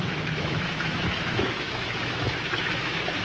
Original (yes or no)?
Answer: no